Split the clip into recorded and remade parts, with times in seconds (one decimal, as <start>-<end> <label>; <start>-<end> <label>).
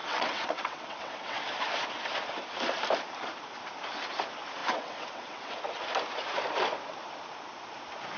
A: 0.0-1.4 remade; 1.4-4.6 recorded; 4.6-5.6 remade; 5.6-8.2 recorded